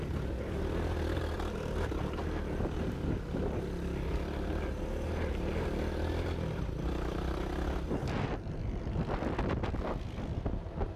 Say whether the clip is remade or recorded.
recorded